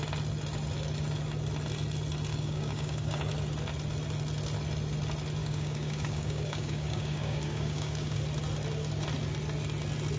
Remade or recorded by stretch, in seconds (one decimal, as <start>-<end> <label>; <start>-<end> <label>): 0.0-2.3 recorded; 2.3-3.2 remade; 3.2-5.4 recorded; 5.4-8.2 remade; 8.2-10.2 recorded